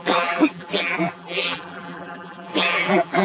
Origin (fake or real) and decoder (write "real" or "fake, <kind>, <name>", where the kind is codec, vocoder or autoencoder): fake, vocoder, BigVGAN v2